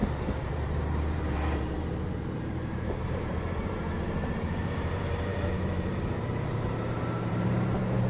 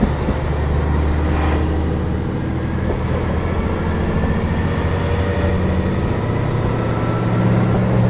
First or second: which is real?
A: second